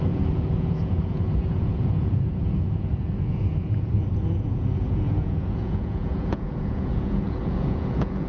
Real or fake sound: fake